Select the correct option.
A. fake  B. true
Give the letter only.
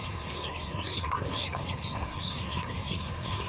A